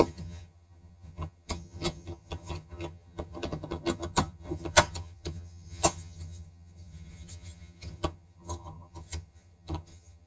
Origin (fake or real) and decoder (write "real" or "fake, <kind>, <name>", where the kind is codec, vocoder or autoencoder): fake, vocoder, HiFi-GAN